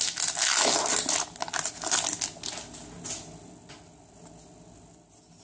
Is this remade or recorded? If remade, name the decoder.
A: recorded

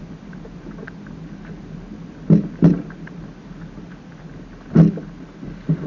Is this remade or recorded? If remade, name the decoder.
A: recorded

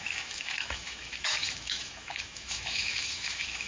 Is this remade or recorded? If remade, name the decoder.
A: remade, autoencoder, DAC-VAE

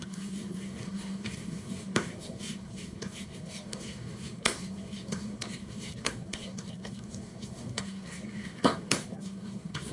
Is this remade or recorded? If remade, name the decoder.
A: remade, codec, SNAC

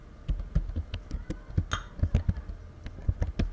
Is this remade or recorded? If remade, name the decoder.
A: recorded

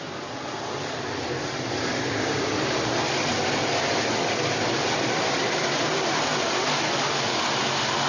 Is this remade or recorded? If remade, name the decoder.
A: recorded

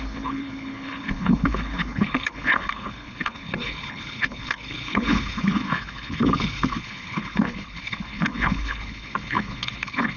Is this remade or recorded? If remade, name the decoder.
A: remade, codec, HILCodec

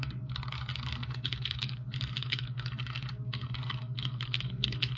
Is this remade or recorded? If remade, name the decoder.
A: remade, codec, SNAC